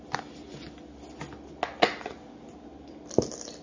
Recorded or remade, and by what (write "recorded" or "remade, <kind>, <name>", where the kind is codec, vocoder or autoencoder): recorded